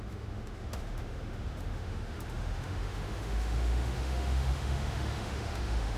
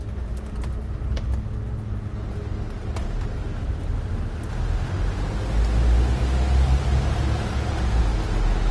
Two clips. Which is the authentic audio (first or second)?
second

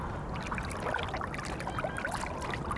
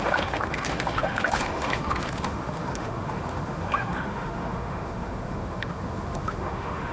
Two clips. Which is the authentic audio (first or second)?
first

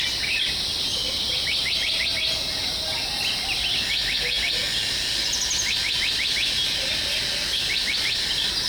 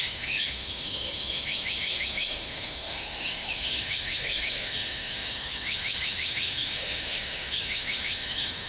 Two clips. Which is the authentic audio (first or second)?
first